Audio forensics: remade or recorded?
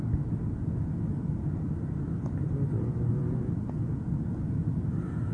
recorded